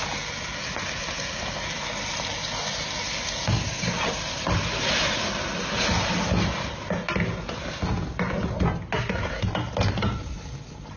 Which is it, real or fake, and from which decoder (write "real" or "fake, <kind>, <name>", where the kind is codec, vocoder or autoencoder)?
real